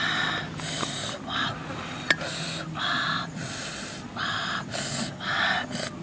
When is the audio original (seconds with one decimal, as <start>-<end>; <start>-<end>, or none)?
0.0-6.0